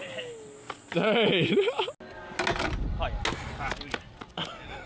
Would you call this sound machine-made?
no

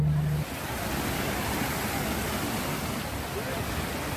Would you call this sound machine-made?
no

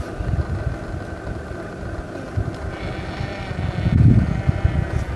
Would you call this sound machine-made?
no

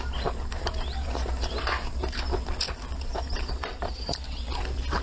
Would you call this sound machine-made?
no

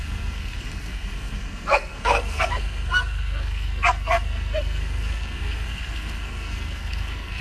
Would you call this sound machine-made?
yes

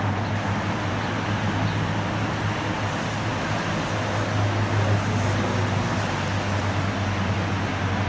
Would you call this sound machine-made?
no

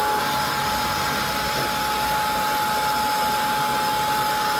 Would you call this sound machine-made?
no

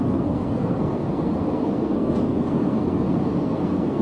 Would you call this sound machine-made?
yes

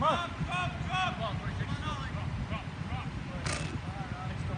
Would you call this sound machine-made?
no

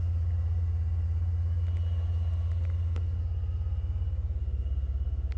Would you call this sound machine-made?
no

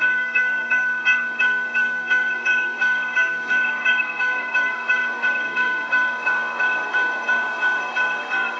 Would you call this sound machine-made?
yes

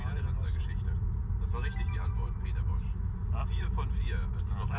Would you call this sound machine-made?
no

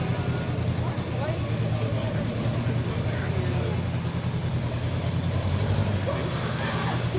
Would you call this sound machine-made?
no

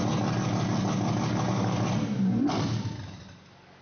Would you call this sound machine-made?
no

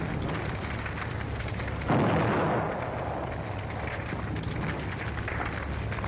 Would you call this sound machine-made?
no